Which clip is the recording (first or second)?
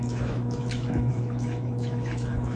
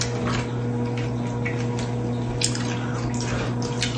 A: second